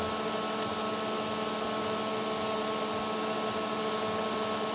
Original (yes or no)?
yes